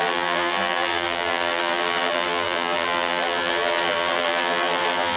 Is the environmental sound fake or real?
fake